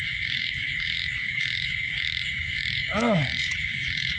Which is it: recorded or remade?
remade